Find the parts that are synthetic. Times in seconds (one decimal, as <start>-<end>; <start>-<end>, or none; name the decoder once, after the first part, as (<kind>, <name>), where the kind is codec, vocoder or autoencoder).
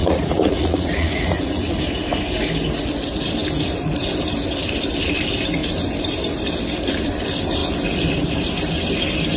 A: 0.0-1.8 (vocoder, Vocos)